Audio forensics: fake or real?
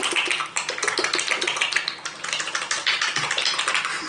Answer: real